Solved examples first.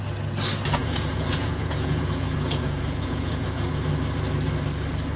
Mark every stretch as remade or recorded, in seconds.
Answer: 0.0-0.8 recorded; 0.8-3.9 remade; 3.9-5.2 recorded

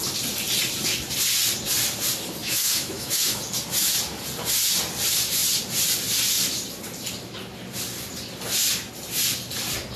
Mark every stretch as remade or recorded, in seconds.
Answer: 0.0-2.4 recorded; 2.4-3.4 remade; 3.4-10.0 recorded

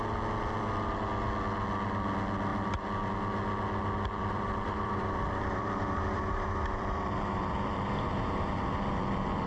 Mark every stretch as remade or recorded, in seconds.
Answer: 0.0-4.2 recorded; 4.2-8.1 remade; 8.1-9.5 recorded

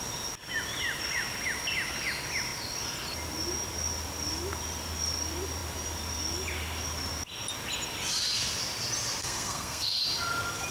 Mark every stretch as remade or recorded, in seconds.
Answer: 0.0-9.2 recorded; 9.2-10.0 remade; 10.0-10.7 recorded

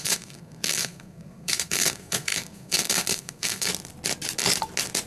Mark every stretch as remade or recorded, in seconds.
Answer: 0.0-3.7 remade; 3.7-5.1 recorded

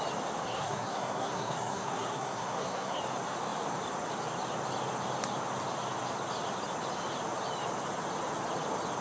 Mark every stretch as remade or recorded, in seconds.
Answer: 0.0-0.4 recorded; 0.4-3.0 remade; 3.0-9.0 recorded

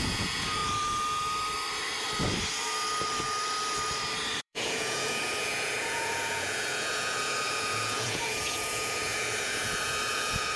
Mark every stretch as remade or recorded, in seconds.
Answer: 0.0-0.6 remade; 0.6-4.4 recorded; 4.4-10.6 remade